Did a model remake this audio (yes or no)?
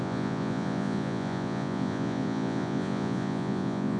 yes